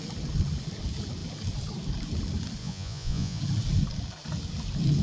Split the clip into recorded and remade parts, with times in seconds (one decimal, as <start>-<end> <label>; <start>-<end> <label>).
0.0-2.6 recorded; 2.6-3.4 remade; 3.4-5.0 recorded